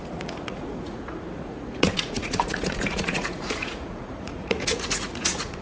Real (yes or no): no